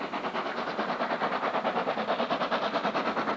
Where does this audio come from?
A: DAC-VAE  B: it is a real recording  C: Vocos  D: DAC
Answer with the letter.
B